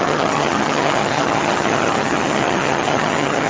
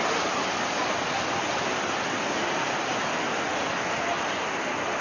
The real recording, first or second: second